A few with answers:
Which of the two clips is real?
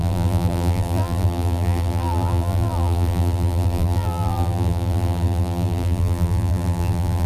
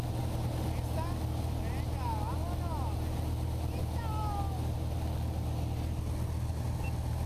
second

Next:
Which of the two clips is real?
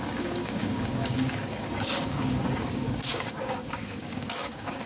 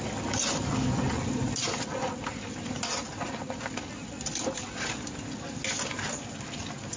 second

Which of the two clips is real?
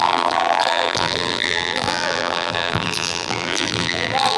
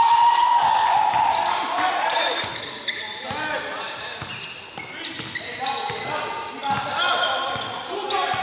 second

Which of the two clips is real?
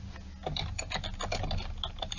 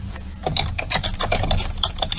first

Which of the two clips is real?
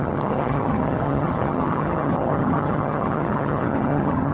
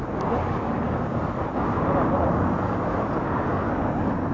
second